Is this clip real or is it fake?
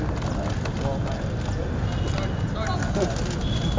real